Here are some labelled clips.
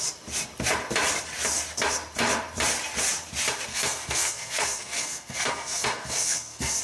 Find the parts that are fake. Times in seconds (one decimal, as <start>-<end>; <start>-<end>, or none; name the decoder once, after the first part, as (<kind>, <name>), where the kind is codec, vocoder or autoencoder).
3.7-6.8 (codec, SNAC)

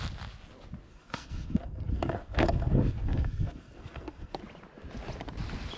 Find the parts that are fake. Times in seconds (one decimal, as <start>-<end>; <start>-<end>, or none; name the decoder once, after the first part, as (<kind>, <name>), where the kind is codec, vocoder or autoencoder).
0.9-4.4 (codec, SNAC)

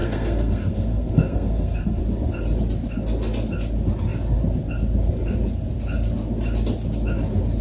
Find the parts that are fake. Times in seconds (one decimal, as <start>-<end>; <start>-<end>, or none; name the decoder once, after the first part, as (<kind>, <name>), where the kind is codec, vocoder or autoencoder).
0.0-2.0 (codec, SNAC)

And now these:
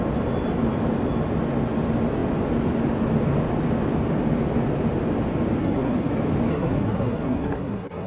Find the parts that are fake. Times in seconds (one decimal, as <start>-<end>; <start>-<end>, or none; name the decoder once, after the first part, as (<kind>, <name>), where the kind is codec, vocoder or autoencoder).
5.6-6.1 (codec, SNAC); 6.5-8.1